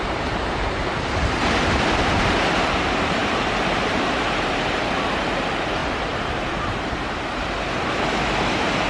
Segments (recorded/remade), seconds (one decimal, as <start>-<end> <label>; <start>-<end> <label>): 0.0-8.9 remade